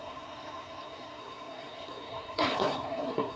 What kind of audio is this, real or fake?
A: fake